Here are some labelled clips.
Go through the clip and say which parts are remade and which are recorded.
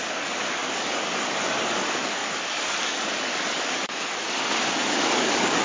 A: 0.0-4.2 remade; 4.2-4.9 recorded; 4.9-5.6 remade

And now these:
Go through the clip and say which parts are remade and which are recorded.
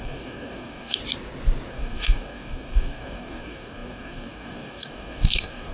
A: 0.0-1.0 remade; 1.0-1.7 recorded; 1.7-5.7 remade